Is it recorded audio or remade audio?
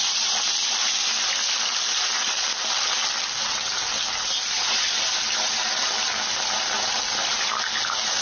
recorded